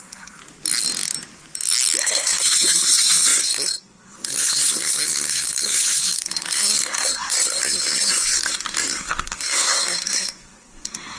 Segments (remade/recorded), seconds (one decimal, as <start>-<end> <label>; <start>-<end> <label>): 0.0-0.4 remade; 0.4-2.0 recorded; 2.0-11.2 remade